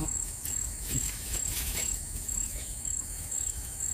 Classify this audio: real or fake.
fake